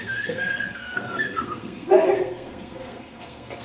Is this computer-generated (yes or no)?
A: yes